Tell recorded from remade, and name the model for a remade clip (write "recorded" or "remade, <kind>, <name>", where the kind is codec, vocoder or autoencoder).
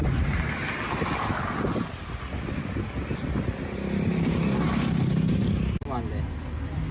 recorded